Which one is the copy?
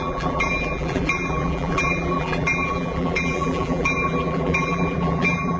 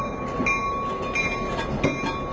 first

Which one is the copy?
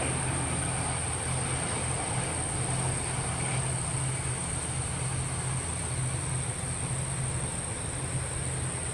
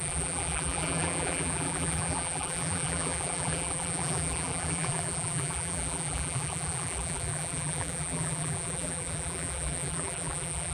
second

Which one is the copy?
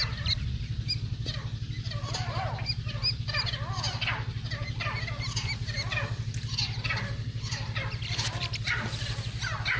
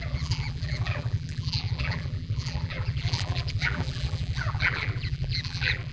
second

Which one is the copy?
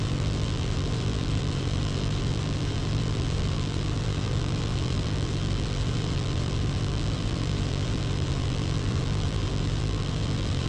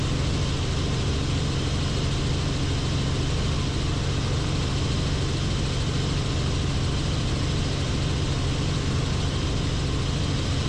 first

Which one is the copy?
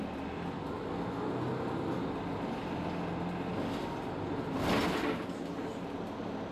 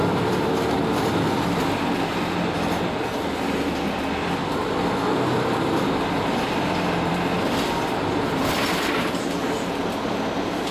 second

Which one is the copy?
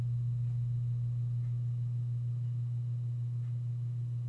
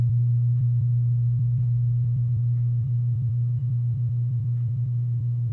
second